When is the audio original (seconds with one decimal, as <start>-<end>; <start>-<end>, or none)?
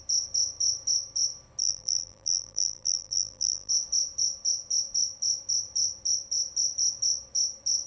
0.0-1.6; 3.7-7.9